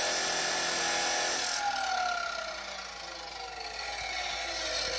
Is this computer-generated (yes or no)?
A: no